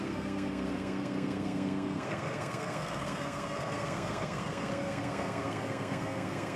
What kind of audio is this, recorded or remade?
remade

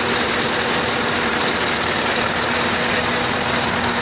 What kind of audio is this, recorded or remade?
recorded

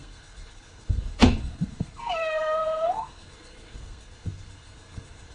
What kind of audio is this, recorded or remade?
remade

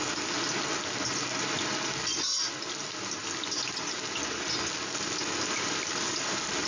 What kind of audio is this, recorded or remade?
recorded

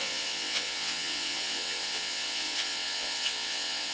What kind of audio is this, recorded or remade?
remade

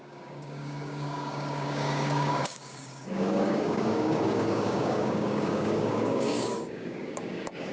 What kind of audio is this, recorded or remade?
remade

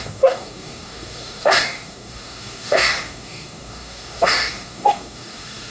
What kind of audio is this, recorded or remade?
remade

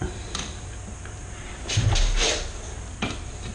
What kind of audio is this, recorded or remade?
recorded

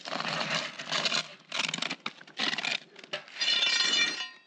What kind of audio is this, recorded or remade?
recorded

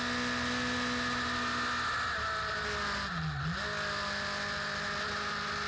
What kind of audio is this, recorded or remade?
recorded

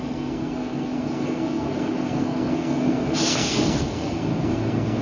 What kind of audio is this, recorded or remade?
remade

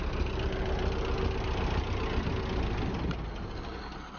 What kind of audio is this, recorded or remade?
recorded